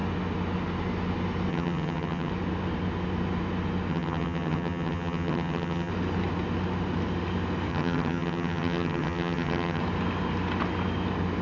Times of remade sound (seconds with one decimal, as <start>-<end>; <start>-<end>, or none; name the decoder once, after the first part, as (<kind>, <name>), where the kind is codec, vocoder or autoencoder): 1.5-2.3 (vocoder, HiFi-GAN); 3.9-5.9; 7.7-9.8